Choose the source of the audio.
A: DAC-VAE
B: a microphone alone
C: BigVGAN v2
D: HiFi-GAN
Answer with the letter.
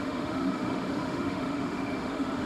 A